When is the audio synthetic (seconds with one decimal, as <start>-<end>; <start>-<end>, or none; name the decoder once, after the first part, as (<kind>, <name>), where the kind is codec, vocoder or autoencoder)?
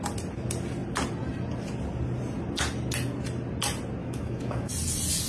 4.0-4.7 (autoencoder, DAC-VAE)